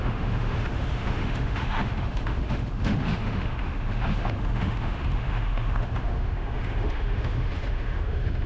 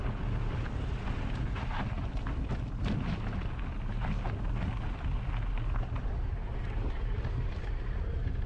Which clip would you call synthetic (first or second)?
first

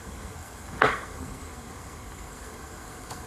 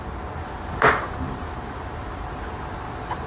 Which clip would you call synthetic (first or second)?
first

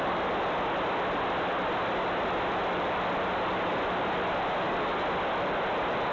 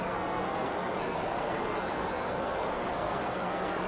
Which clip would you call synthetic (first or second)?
second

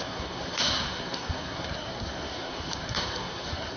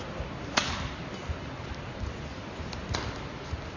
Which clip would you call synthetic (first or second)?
first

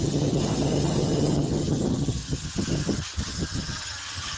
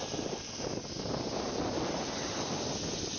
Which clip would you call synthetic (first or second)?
first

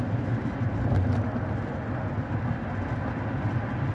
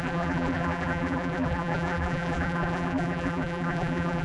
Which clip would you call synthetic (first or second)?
second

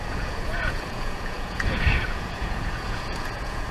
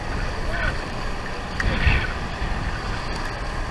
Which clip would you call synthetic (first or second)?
first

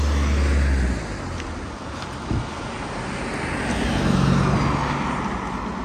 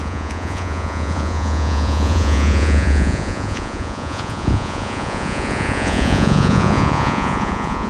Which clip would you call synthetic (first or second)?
second